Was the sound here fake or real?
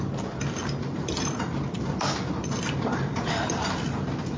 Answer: real